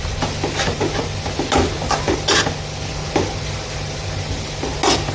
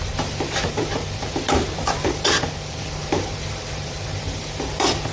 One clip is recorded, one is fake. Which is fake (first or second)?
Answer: second